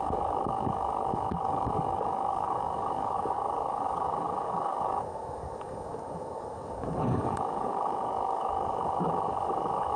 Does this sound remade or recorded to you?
remade